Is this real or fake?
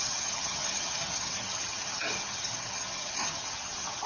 fake